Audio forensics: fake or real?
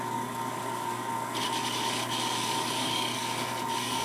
fake